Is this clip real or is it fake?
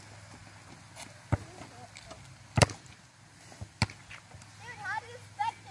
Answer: real